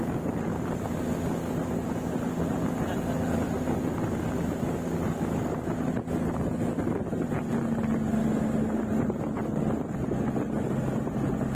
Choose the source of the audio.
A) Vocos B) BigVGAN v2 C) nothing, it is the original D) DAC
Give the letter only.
C